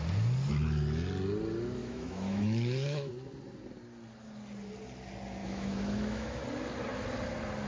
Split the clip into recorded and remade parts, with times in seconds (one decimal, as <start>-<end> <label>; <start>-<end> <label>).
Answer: 0.0-1.8 recorded; 1.8-3.1 remade; 3.1-5.4 recorded; 5.4-6.4 remade; 6.4-7.7 recorded